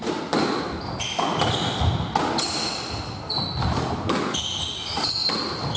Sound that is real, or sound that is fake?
real